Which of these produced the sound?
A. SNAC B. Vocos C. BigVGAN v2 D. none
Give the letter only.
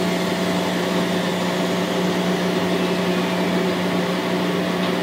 D